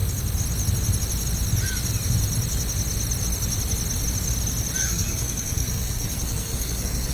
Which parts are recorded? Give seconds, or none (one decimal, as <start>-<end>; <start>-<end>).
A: 0.0-4.8